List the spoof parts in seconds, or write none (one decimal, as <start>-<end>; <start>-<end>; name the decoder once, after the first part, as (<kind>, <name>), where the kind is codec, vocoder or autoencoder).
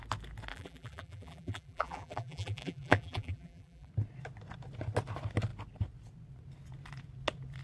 0.5-3.9 (vocoder, BigVGAN v2)